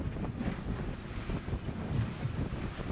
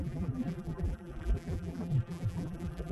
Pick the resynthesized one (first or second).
second